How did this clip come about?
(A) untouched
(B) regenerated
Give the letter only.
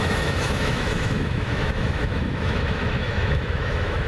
B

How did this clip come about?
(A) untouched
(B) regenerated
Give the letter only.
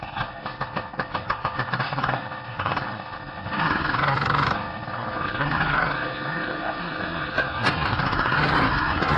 B